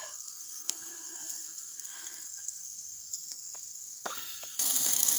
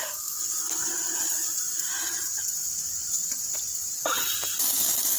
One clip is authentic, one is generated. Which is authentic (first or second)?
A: second